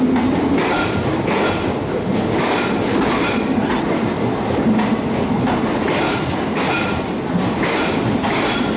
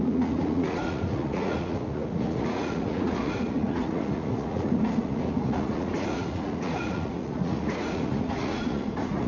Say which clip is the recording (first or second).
first